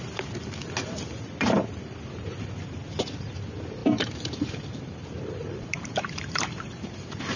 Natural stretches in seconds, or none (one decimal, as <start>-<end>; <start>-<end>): 0.0-3.8